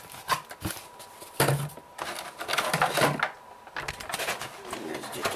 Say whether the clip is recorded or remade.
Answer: recorded